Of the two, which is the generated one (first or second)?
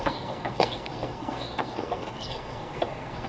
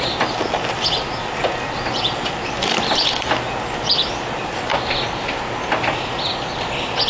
first